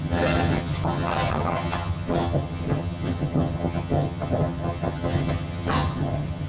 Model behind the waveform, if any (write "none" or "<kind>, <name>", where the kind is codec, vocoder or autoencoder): vocoder, HiFi-GAN